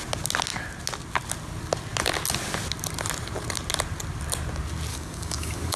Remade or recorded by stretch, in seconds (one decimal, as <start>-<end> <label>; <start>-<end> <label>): 0.0-4.9 recorded; 4.9-5.8 remade